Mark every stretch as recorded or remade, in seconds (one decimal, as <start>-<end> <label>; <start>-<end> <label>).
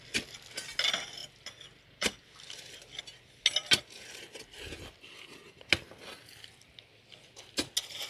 0.0-1.2 recorded; 1.2-3.0 remade; 3.0-3.6 recorded; 3.6-4.7 remade; 4.7-8.1 recorded